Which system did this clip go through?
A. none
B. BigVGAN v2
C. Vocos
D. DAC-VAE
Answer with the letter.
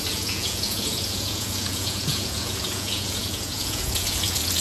C